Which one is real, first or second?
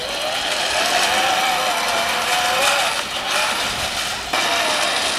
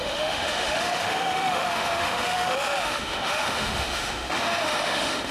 first